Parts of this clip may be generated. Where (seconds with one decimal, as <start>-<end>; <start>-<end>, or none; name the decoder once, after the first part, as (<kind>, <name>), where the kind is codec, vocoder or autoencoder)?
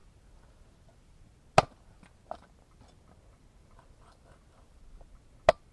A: none